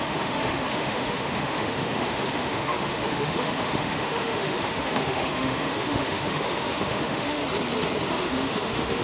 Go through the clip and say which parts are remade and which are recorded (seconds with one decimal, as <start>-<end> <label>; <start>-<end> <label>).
0.0-7.4 remade; 7.4-8.1 recorded; 8.1-9.0 remade